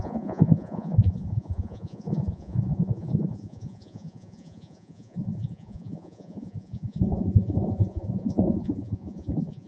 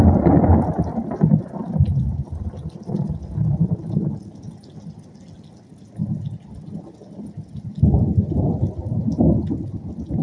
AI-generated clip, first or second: first